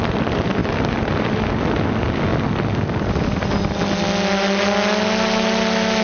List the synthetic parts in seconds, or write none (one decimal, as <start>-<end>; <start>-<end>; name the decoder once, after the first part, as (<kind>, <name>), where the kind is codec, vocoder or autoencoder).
none